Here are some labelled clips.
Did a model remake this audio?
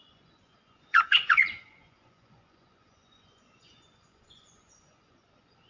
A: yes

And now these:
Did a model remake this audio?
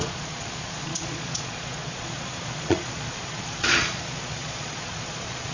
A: yes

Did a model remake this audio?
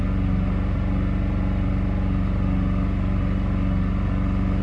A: no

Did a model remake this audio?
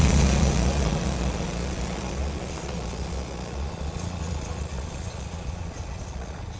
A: yes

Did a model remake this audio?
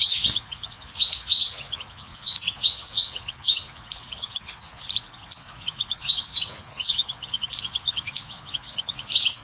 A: yes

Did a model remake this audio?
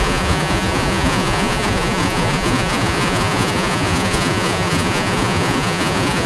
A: yes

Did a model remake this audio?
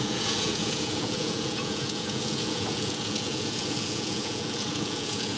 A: yes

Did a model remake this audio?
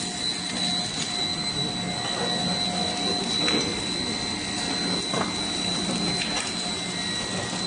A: no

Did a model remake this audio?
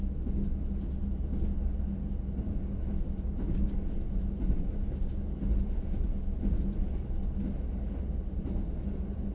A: no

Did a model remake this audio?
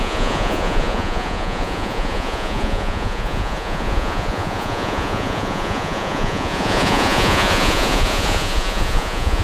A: yes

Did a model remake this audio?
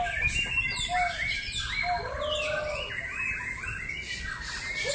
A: no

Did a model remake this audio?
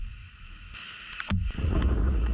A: yes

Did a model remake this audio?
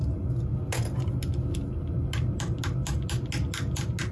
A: no